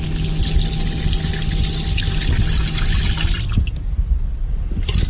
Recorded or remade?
recorded